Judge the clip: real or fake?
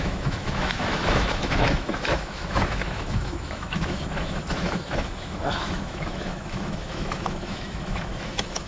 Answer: fake